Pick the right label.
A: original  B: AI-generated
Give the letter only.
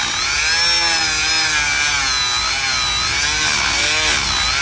A